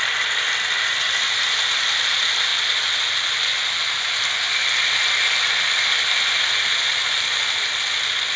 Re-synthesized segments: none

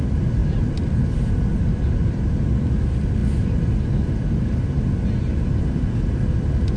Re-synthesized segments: 0.4-2.6 (vocoder, BigVGAN v2)

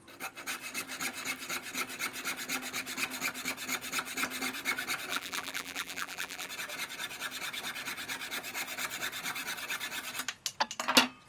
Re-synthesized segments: 5.1-6.5 (vocoder, BigVGAN v2)

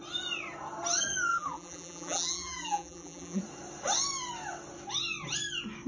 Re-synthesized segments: 1.3-3.4 (vocoder, BigVGAN v2)